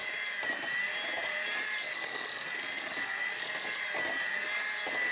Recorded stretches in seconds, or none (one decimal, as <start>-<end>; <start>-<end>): 0.0-5.1